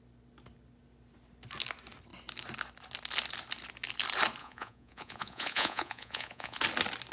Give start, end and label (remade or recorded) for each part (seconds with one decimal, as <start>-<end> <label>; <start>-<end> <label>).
0.0-4.4 recorded; 4.4-6.6 remade; 6.6-7.1 recorded

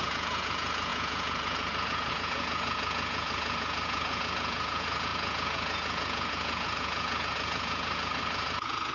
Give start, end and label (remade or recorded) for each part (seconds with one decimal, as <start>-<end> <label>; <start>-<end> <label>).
0.0-8.9 remade

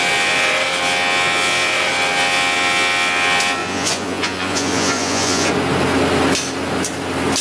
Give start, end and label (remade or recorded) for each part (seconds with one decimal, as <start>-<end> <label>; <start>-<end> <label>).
0.0-3.6 recorded; 3.6-5.5 remade; 5.5-7.4 recorded

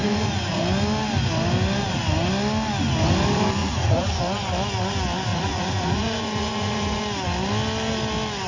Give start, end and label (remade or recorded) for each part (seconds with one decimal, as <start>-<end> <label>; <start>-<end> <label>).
0.0-0.6 remade; 0.6-3.6 recorded; 3.6-4.2 remade; 4.2-5.3 recorded; 5.3-7.0 remade; 7.0-8.5 recorded

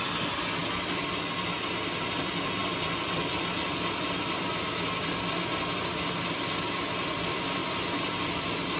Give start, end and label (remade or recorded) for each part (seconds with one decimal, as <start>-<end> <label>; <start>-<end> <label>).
0.0-8.8 recorded

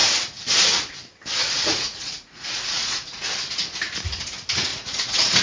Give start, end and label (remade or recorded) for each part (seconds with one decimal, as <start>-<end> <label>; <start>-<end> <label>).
0.0-1.5 recorded; 1.5-3.3 remade; 3.3-4.7 recorded; 4.7-5.4 remade

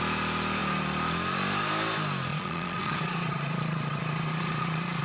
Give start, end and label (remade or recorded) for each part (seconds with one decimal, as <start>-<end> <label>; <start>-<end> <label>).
0.0-2.3 recorded; 2.3-5.0 remade

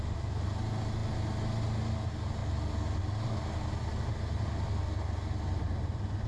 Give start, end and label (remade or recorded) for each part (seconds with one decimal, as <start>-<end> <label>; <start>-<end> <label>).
0.0-6.3 recorded